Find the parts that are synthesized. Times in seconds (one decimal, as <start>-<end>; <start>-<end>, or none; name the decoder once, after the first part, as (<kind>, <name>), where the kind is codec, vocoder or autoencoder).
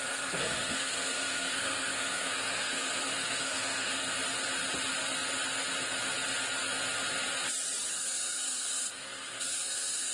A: 0.0-3.9 (codec, SNAC); 7.9-10.1